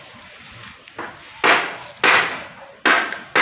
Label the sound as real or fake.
real